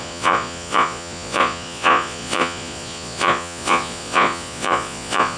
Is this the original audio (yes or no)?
no